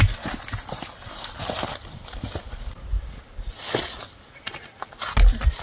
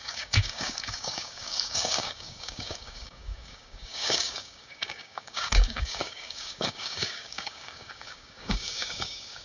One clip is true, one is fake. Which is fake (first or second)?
second